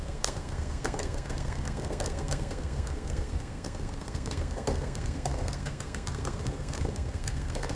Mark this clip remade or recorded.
remade